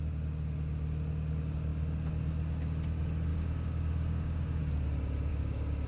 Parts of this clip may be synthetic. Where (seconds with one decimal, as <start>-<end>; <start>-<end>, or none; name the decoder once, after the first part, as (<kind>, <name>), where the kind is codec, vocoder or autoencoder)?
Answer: 3.3-4.6 (codec, DAC); 5.3-5.9